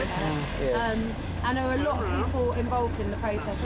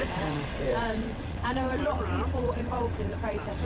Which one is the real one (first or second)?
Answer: first